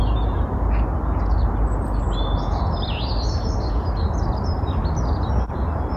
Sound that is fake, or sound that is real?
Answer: real